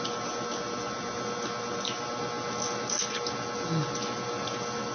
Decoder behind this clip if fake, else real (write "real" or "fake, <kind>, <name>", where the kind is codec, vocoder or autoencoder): real